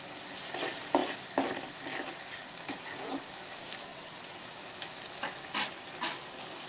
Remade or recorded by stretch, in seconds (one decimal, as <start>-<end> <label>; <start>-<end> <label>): 0.0-3.9 recorded; 3.9-4.6 remade; 4.6-6.7 recorded